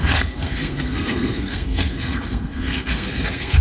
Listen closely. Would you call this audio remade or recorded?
remade